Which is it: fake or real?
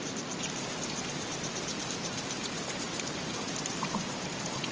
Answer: fake